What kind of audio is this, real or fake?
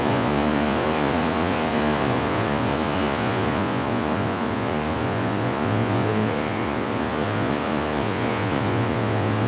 fake